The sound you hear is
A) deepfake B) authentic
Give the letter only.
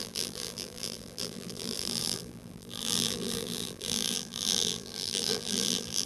A